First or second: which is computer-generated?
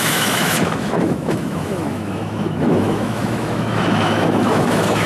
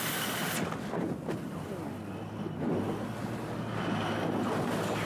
first